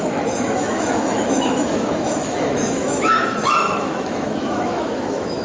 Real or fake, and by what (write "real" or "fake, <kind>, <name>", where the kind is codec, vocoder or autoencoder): fake, autoencoder, DAC-VAE